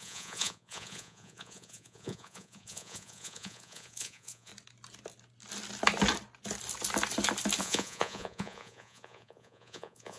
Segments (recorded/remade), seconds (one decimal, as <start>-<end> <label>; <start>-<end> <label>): 0.0-4.5 remade; 4.5-7.6 recorded; 7.6-10.2 remade